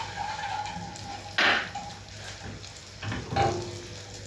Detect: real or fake real